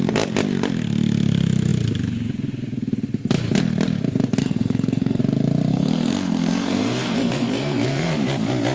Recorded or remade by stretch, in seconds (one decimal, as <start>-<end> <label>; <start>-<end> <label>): 0.0-4.4 recorded; 4.4-5.2 remade; 5.2-5.7 recorded; 5.7-8.1 remade; 8.1-8.7 recorded